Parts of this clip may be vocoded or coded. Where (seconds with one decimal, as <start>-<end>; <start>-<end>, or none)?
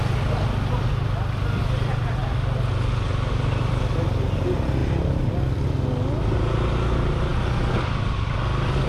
none